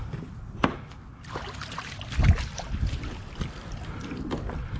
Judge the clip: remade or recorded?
recorded